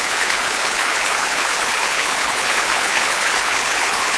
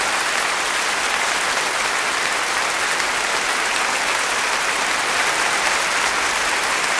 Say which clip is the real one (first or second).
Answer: second